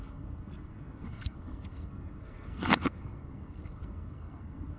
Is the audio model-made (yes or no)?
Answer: yes